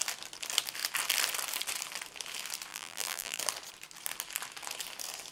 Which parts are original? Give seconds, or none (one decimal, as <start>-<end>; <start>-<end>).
0.0-2.7; 3.4-5.3